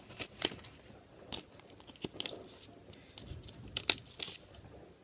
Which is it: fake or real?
real